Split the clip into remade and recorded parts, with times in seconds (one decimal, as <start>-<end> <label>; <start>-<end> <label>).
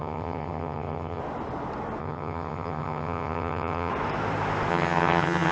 0.0-1.2 remade; 1.2-2.0 recorded; 2.0-3.9 remade; 3.9-4.7 recorded; 4.7-5.5 remade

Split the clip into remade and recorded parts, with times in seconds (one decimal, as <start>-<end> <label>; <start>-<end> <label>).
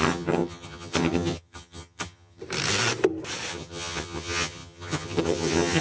0.0-2.4 remade; 2.4-3.5 recorded; 3.5-5.8 remade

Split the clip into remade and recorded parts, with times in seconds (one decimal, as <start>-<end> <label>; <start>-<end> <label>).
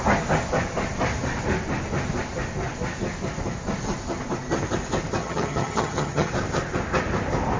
0.0-5.2 recorded; 5.2-6.3 remade; 6.3-7.6 recorded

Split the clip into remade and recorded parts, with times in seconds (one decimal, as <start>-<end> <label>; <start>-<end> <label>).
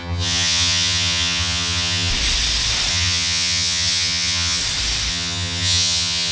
0.0-2.1 remade; 2.1-2.9 recorded; 2.9-4.6 remade; 4.6-5.1 recorded; 5.1-6.3 remade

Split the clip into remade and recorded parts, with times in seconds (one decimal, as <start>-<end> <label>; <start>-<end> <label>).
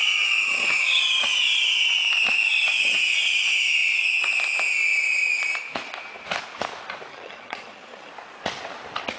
0.0-0.4 recorded; 0.4-1.0 remade; 1.0-7.1 recorded; 7.1-8.1 remade; 8.1-9.2 recorded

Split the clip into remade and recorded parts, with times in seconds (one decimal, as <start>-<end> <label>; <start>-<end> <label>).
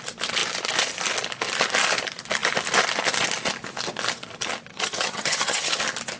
0.0-4.7 recorded; 4.7-5.8 remade; 5.8-6.2 recorded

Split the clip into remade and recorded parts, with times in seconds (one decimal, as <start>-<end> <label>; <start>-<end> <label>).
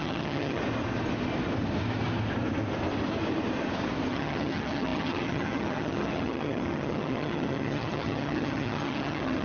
0.0-0.6 remade; 0.6-4.1 recorded; 4.1-9.4 remade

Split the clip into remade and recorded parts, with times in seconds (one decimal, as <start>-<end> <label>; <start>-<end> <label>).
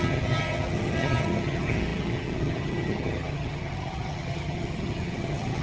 0.0-5.6 remade